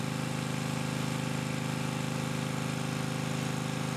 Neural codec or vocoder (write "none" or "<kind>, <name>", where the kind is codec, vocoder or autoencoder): none